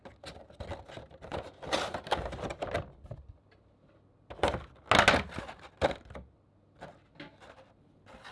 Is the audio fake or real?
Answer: real